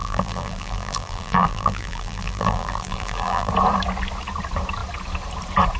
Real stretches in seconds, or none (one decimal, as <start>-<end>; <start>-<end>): 3.5-5.8